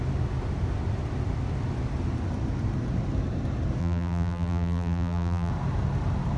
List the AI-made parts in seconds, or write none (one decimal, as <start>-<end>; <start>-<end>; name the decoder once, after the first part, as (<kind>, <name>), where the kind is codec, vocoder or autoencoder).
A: 3.8-5.5 (vocoder, BigVGAN v2)

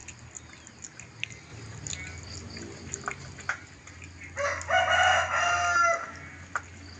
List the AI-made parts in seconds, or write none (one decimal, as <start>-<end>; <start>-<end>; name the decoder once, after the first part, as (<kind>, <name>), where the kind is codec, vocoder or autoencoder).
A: none

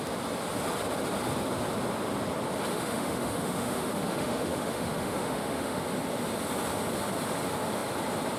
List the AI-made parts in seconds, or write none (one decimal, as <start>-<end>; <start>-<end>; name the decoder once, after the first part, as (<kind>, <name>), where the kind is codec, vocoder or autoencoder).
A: 2.7-5.8 (autoencoder, DAC-VAE)

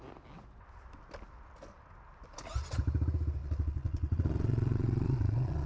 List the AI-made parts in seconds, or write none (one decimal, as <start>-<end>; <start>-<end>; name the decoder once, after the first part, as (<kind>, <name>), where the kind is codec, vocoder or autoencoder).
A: 3.4-5.7 (vocoder, Vocos)

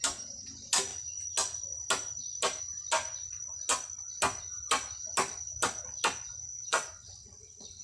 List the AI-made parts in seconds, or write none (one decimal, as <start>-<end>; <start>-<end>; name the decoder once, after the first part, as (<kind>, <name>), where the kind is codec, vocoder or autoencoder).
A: 6.7-7.8 (vocoder, WaveNeXt)

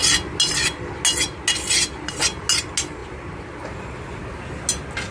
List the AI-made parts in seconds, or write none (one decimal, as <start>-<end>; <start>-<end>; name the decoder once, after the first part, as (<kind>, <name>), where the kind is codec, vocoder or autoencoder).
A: none